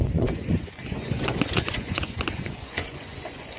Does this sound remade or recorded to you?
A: remade